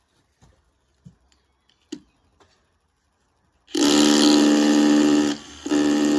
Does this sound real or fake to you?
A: real